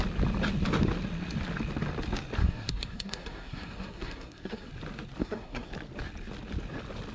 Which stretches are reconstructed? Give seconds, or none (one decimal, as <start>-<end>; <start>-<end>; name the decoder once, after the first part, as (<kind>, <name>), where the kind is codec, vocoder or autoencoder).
2.4-4.7 (codec, SNAC); 5.2-5.7